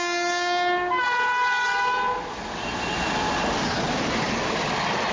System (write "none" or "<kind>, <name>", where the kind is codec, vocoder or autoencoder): none